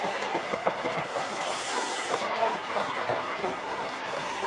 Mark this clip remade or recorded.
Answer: remade